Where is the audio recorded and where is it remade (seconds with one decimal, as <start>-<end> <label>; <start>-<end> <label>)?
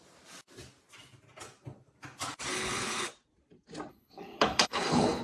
0.0-2.5 recorded; 2.5-3.1 remade; 3.1-3.9 recorded; 3.9-5.2 remade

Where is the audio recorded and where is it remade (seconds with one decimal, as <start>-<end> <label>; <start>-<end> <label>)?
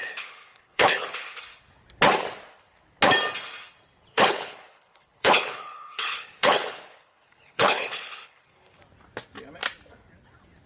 0.0-1.4 remade; 1.4-4.1 recorded; 4.1-8.8 remade; 8.8-10.7 recorded